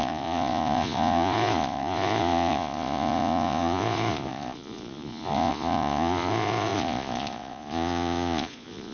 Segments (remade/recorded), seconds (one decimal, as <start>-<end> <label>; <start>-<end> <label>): 0.0-8.9 remade